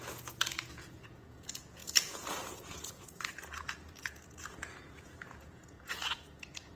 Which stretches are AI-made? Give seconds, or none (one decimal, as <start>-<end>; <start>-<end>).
0.0-6.8